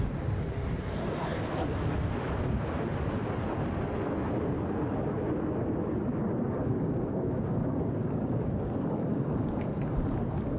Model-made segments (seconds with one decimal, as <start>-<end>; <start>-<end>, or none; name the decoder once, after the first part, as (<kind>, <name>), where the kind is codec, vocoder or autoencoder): 6.6-9.8 (codec, DAC)